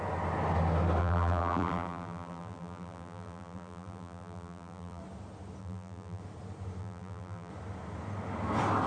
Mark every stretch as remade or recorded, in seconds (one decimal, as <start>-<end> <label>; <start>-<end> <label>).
0.0-1.0 recorded; 1.0-5.0 remade; 5.0-5.6 recorded; 5.6-6.2 remade; 6.2-6.8 recorded; 6.8-7.5 remade; 7.5-8.9 recorded